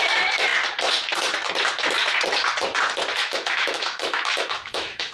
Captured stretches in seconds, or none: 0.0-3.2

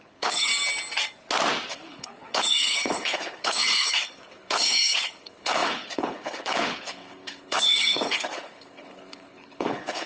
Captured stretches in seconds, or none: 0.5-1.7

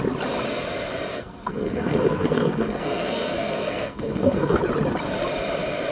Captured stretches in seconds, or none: 0.0-1.1; 4.6-5.9